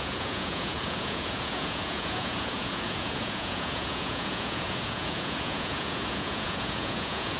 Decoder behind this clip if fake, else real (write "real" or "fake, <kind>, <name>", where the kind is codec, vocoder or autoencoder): fake, vocoder, Vocos